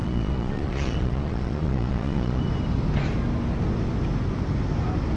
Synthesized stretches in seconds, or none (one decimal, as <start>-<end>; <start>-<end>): 0.0-2.4